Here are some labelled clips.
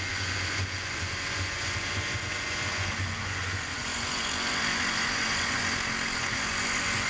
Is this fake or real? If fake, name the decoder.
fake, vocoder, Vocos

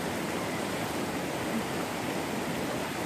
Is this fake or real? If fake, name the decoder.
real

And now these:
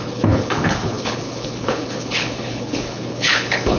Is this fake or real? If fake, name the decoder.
fake, codec, HILCodec